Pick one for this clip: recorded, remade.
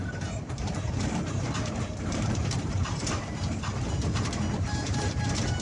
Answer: remade